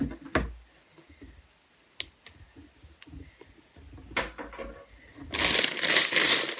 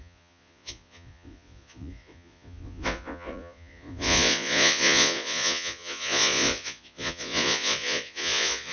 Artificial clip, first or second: second